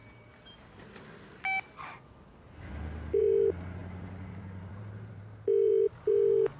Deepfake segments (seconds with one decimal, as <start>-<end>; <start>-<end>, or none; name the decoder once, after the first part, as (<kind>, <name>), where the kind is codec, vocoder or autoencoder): 3.2-6.6 (vocoder, BigVGAN v2)